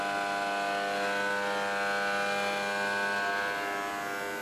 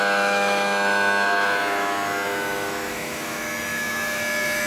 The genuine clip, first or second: first